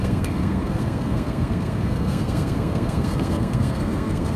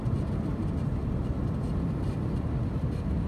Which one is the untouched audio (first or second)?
second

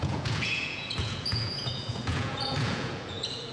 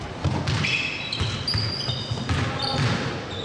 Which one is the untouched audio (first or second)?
second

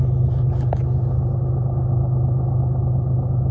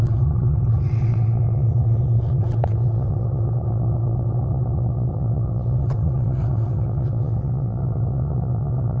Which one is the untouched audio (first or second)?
first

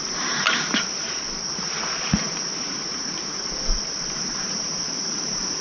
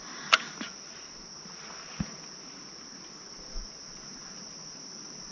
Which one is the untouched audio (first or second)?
second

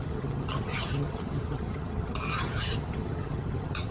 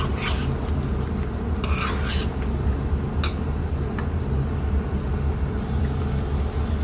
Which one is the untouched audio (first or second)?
second